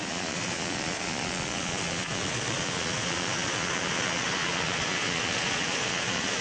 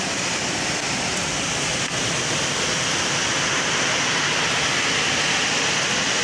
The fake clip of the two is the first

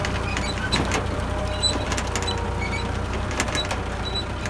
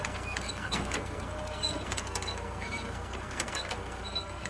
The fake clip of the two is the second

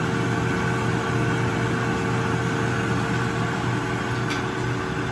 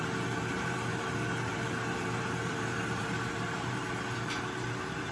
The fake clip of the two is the second